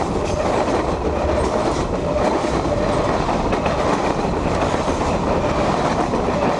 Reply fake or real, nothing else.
real